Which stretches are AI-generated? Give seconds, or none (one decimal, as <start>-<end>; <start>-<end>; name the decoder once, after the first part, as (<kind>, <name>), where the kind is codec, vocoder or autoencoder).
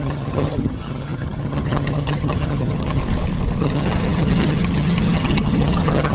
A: 0.0-3.0 (vocoder, HiFi-GAN); 3.6-6.1